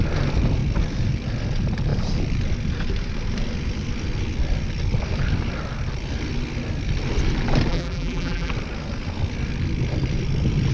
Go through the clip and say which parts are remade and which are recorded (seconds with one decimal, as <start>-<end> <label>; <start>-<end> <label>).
0.0-7.7 recorded; 7.7-8.5 remade; 8.5-10.7 recorded